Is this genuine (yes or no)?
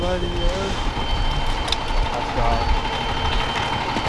yes